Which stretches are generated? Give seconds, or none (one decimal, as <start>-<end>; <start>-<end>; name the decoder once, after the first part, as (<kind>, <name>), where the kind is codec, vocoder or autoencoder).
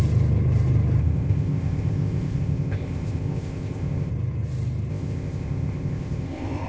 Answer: 1.0-4.1 (codec, ZipCodec); 4.9-6.7